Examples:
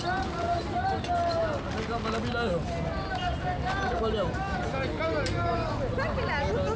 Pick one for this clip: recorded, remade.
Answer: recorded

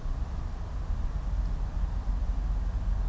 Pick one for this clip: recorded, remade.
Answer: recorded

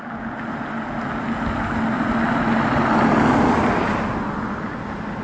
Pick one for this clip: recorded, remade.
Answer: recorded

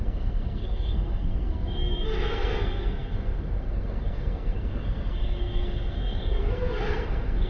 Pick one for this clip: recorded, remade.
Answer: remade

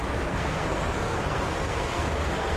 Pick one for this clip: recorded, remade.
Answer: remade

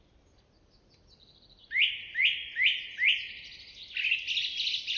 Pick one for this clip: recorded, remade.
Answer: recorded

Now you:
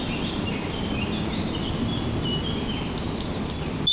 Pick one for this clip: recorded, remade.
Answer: recorded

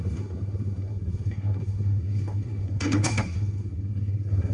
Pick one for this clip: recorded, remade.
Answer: remade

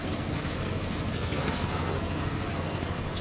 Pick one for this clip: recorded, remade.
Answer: remade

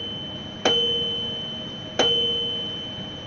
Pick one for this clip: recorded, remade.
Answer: recorded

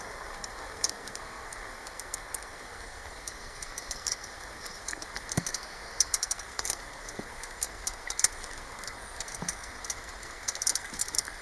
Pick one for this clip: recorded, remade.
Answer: remade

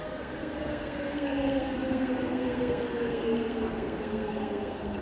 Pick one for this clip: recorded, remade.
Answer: remade